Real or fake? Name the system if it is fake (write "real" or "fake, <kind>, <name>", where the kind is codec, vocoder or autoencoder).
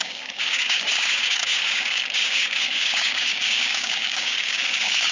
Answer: fake, codec, DAC